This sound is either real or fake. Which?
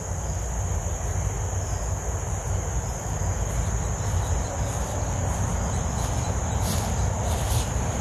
real